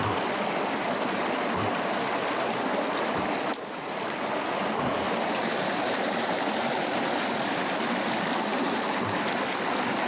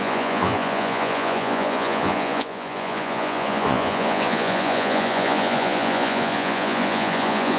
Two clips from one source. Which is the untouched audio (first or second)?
first